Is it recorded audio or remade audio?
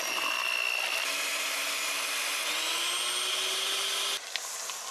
recorded